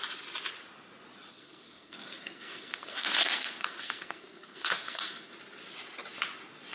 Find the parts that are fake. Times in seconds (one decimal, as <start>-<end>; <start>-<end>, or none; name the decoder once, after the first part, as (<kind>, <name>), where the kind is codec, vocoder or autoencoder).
1.3-5.3 (codec, SNAC)